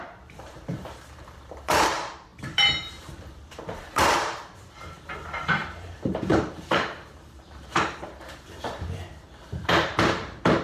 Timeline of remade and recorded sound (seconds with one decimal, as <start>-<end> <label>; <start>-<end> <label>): 0.0-10.6 remade